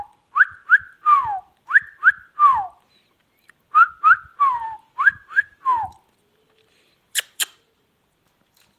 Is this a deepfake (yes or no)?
yes